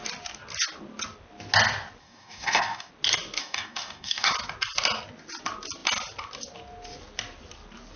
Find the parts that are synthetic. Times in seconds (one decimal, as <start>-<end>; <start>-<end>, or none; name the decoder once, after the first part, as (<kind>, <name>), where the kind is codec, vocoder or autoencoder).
2.0-2.9 (codec, DAC); 3.4-4.3